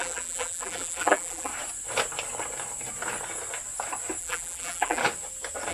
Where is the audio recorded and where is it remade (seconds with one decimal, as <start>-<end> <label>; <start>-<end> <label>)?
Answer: 0.0-1.5 remade; 1.5-4.2 recorded; 4.2-5.0 remade; 5.0-5.7 recorded